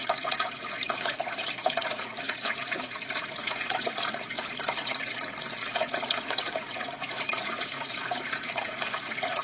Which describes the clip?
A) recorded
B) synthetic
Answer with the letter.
B